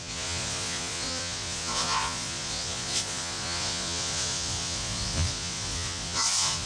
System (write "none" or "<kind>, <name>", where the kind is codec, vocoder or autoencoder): vocoder, Vocos